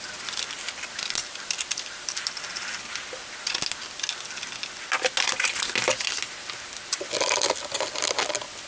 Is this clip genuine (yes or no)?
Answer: yes